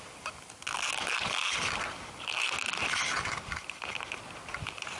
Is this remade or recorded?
recorded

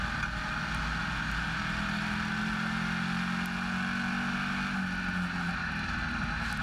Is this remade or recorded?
recorded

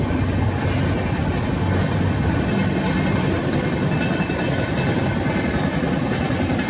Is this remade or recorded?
recorded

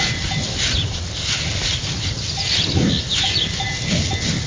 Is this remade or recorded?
recorded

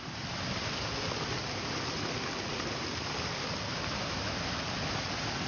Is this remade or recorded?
recorded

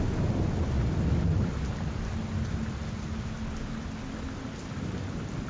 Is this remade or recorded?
recorded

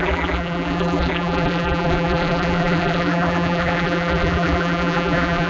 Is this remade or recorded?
remade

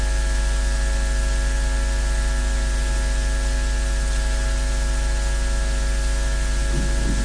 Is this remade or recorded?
recorded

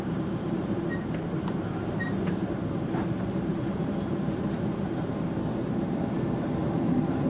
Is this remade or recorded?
remade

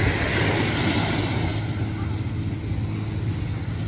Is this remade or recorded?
recorded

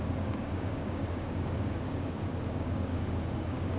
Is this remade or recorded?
remade